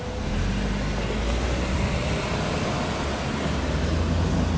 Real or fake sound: real